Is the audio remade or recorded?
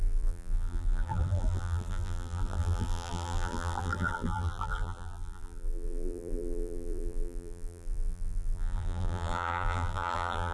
remade